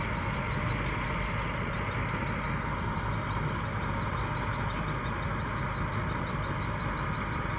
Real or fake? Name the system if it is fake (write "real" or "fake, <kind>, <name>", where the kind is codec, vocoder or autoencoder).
real